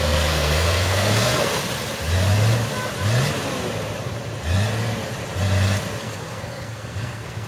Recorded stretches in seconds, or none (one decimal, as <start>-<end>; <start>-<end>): 1.5-6.0